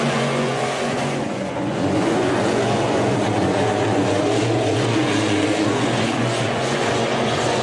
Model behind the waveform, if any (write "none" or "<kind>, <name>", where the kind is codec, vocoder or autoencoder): vocoder, Vocos